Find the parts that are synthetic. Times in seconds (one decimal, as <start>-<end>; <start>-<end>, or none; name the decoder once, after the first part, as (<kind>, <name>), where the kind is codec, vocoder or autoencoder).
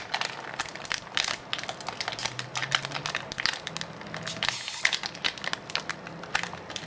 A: none